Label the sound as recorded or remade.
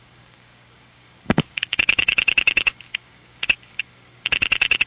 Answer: remade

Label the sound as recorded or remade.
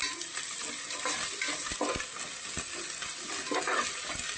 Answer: recorded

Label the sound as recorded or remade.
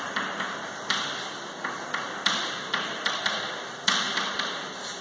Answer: recorded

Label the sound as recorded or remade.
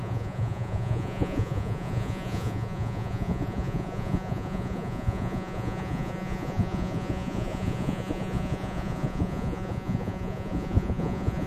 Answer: remade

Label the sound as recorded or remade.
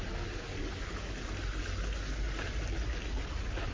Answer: recorded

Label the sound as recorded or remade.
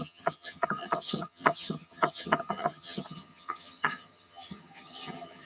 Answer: remade